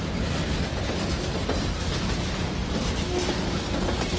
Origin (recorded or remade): recorded